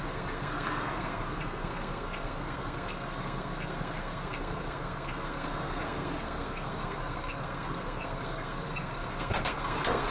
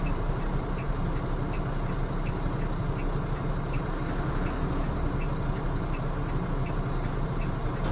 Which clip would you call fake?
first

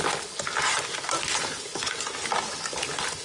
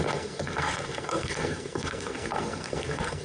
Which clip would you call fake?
second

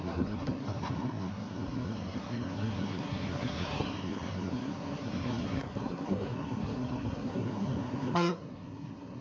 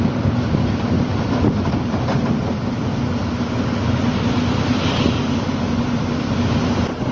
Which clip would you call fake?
first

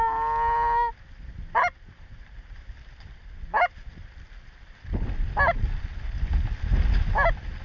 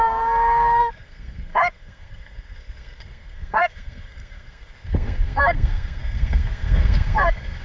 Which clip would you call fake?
second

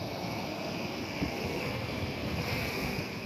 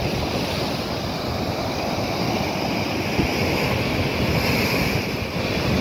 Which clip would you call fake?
first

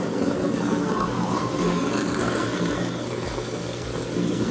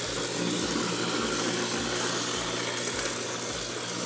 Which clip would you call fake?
first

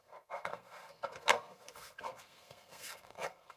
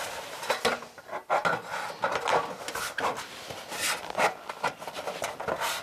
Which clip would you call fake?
first